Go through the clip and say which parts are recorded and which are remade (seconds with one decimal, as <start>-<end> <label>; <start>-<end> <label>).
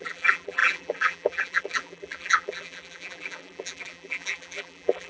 0.0-5.1 remade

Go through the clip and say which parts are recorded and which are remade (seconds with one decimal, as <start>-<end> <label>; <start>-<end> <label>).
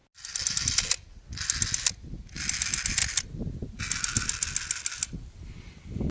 0.0-6.1 recorded